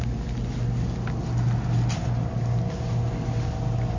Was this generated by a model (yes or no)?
no